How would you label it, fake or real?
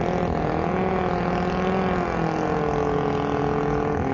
real